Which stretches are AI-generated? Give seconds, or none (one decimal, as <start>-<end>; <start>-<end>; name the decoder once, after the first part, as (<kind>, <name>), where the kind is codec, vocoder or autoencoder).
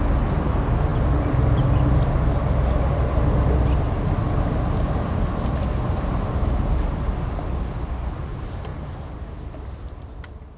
none